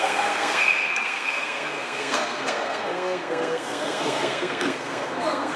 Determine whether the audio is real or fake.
fake